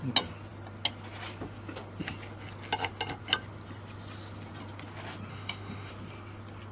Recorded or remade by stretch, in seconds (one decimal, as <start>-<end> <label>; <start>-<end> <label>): 0.0-5.3 recorded; 5.3-5.9 remade; 5.9-6.7 recorded